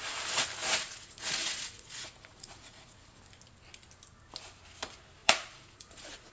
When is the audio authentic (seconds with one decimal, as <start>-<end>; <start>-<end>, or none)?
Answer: 0.0-0.6; 3.2-5.2